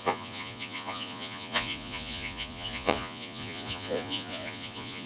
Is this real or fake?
fake